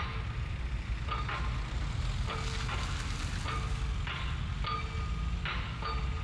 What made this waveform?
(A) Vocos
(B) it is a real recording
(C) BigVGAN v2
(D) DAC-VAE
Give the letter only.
B